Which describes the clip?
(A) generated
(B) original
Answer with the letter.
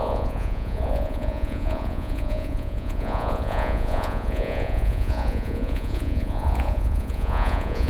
A